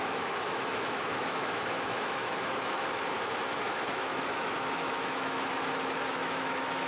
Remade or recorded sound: remade